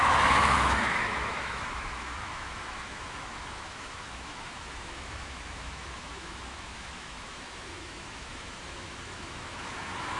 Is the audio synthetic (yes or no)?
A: yes